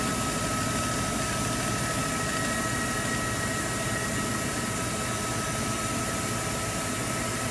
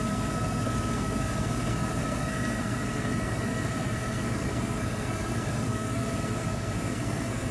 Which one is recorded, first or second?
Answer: first